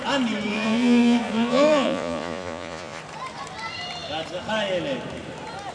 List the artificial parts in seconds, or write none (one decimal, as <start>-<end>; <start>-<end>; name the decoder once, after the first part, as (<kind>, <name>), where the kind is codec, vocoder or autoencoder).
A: 0.5-3.0 (vocoder, Vocos)